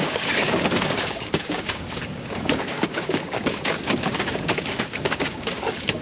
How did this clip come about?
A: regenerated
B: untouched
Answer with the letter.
A